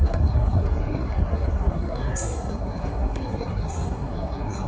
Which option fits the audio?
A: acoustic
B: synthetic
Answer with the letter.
B